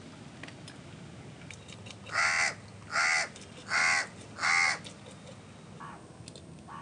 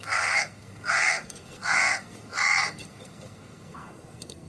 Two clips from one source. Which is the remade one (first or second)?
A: second